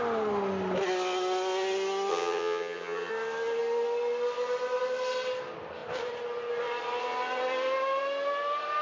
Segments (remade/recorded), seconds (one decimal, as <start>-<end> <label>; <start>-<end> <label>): 0.0-2.1 recorded; 2.1-3.1 remade; 3.1-8.8 recorded